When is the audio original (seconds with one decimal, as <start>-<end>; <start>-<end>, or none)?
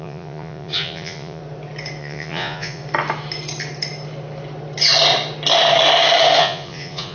1.4-2.0; 2.8-6.4